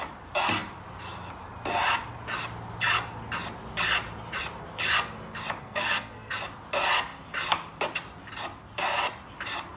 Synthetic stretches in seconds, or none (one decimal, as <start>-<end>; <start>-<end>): 5.6-6.3